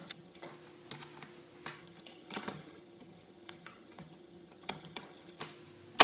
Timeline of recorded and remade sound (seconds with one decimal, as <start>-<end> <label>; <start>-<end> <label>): 0.0-0.5 remade; 0.5-1.8 recorded; 1.8-5.4 remade; 5.4-6.0 recorded